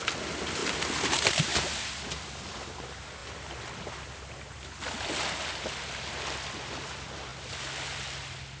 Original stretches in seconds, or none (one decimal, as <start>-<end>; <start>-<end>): 0.0-8.6